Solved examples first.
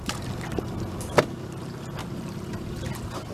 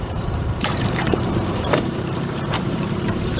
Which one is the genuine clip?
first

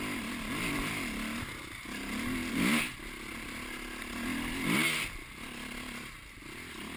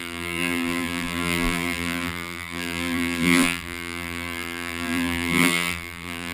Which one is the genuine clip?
first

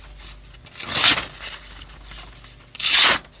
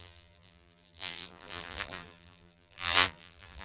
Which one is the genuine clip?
first